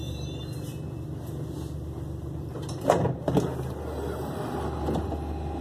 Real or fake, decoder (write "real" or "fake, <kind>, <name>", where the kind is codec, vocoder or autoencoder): real